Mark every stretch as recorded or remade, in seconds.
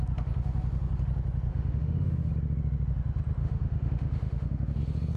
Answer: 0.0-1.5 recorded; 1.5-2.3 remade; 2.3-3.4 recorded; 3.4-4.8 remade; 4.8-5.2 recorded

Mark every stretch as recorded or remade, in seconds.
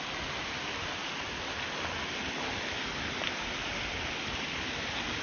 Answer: 0.0-5.2 recorded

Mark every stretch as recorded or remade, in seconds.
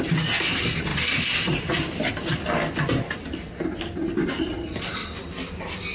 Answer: 0.0-5.9 recorded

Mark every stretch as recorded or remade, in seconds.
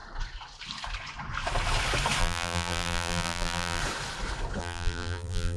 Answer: 0.0-2.2 recorded; 2.2-3.8 remade; 3.8-4.6 recorded; 4.6-5.6 remade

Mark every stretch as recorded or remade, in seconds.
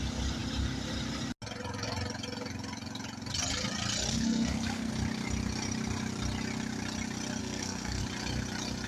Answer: 0.0-4.1 recorded; 4.1-4.9 remade; 4.9-7.4 recorded; 7.4-8.0 remade; 8.0-8.9 recorded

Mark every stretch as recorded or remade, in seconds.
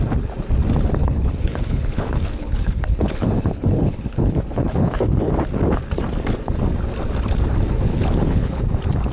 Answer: 0.0-1.0 recorded; 1.0-5.3 remade; 5.3-7.9 recorded; 7.9-8.6 remade; 8.6-9.1 recorded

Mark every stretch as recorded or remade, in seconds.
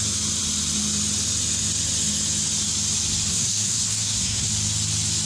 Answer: 0.0-3.3 recorded; 3.3-4.5 remade; 4.5-5.3 recorded